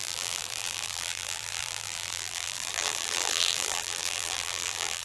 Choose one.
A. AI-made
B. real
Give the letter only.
A